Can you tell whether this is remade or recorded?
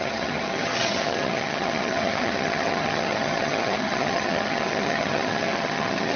remade